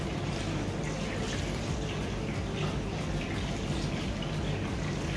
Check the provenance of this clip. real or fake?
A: real